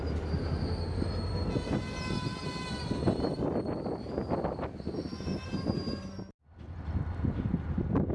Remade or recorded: recorded